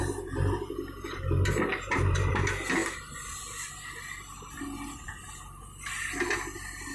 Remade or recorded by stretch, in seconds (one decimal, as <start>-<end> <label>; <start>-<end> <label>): 0.0-1.7 recorded; 1.7-2.3 remade; 2.3-6.9 recorded